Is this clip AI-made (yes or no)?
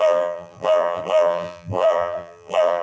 yes